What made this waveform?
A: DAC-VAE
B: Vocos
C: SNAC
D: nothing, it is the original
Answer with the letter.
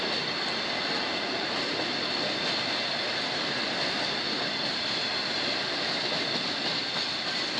D